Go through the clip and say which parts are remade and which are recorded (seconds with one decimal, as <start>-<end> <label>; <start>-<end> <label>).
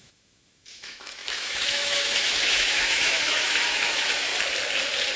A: 0.0-4.3 remade; 4.3-5.2 recorded